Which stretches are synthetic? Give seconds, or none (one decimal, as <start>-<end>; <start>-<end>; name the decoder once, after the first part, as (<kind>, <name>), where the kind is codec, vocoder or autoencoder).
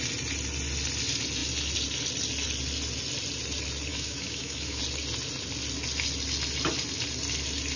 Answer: 3.9-4.8 (autoencoder, DAC-VAE)